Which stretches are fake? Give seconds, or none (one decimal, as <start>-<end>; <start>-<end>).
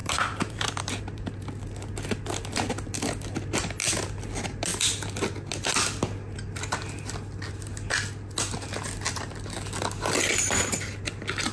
0.0-1.4